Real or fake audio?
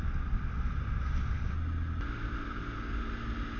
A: real